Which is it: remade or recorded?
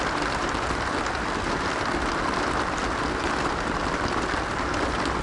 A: recorded